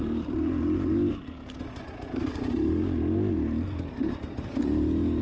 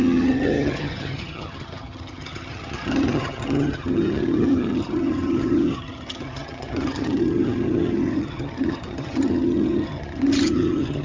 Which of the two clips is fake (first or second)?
second